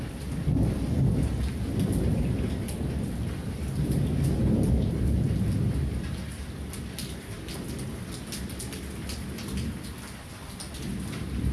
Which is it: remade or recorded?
recorded